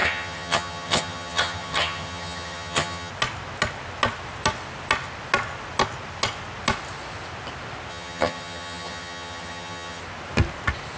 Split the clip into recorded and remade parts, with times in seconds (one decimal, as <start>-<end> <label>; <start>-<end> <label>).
0.0-3.1 remade; 3.1-7.9 recorded; 7.9-10.0 remade; 10.0-11.0 recorded